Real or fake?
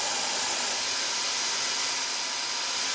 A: real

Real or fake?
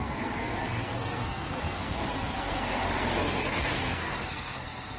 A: fake